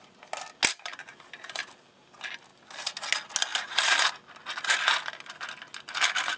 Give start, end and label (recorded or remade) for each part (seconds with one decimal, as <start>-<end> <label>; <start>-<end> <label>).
0.0-1.1 recorded; 1.1-2.1 remade; 2.1-2.5 recorded; 2.5-3.0 remade; 3.0-3.5 recorded; 3.5-4.1 remade; 4.1-6.4 recorded